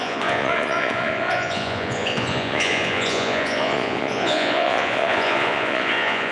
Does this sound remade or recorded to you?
remade